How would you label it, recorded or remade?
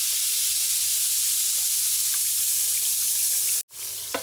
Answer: recorded